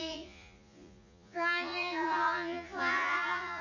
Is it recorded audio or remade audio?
remade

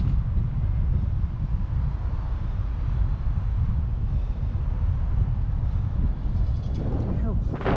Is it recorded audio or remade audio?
recorded